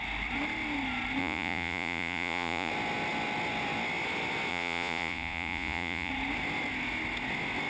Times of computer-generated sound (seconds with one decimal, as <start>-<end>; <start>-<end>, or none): 1.2-2.7; 4.5-6.1